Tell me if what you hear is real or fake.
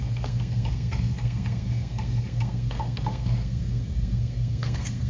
fake